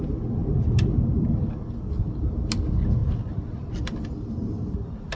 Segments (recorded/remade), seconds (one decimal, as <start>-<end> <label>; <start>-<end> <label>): 0.0-5.2 recorded